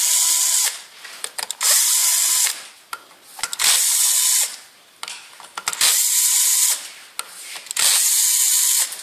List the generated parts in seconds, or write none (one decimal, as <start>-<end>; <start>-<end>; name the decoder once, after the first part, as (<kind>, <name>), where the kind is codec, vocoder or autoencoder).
none

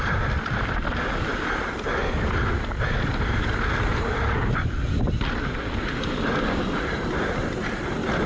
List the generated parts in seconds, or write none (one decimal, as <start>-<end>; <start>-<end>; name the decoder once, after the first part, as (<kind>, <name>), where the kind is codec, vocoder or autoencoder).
0.0-8.3 (vocoder, BigVGAN v2)

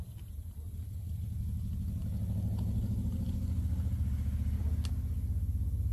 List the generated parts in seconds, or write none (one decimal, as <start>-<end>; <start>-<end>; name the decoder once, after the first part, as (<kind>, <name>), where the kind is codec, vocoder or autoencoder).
0.4-1.0 (vocoder, BigVGAN v2)

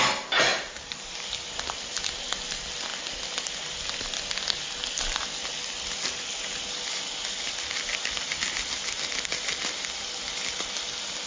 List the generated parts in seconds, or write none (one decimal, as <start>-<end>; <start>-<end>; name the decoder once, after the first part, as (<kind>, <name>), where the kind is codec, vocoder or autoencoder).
0.5-2.0 (vocoder, BigVGAN v2)

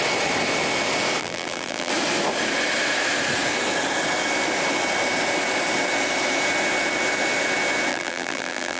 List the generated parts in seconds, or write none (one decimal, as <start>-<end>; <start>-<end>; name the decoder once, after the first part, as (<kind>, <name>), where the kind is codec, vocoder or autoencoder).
1.2-1.9 (vocoder, BigVGAN v2); 7.9-8.8

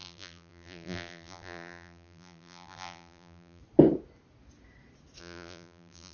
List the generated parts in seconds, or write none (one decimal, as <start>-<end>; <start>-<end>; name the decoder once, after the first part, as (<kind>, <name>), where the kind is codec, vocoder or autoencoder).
0.0-3.6 (vocoder, BigVGAN v2); 5.2-6.1